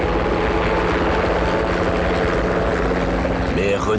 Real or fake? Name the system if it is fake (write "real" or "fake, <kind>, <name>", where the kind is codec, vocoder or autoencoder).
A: real